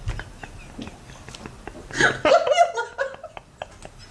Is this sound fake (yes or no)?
no